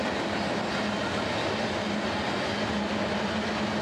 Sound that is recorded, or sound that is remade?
recorded